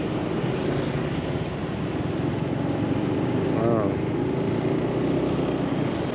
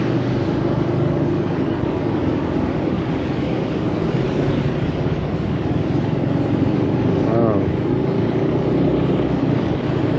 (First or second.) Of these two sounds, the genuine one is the first